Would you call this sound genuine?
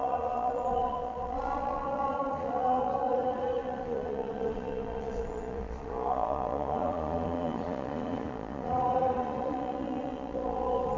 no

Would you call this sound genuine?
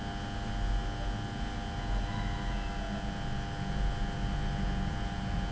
yes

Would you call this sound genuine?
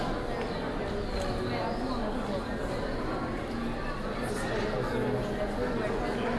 yes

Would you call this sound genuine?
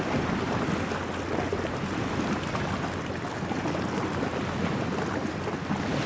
yes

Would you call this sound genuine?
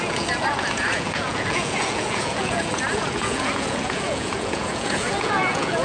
no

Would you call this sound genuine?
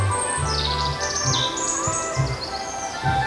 yes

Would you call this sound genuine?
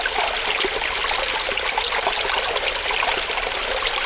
yes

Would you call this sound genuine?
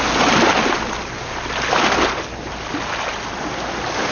yes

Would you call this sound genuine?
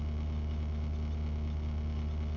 yes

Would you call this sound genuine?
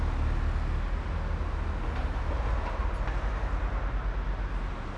yes